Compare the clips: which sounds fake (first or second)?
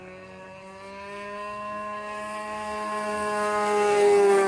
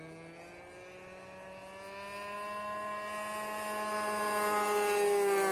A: first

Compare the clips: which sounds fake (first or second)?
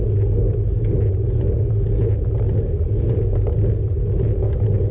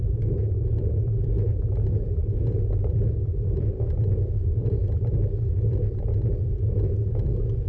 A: second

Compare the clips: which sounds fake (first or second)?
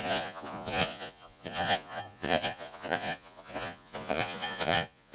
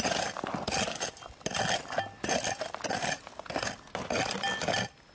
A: first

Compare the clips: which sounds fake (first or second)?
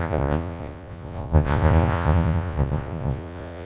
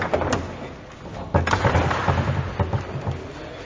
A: first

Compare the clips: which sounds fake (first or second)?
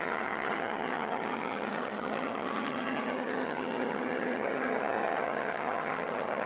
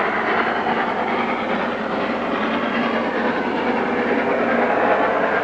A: first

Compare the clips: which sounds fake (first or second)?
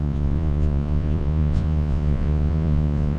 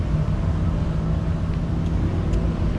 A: first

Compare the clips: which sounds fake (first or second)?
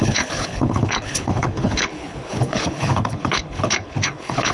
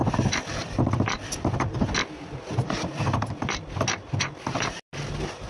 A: first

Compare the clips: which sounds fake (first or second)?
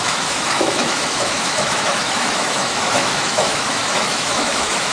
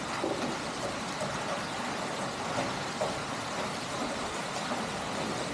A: first